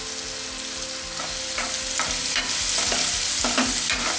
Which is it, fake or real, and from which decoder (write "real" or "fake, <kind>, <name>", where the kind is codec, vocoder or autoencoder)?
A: real